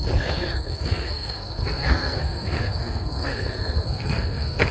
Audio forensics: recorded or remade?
remade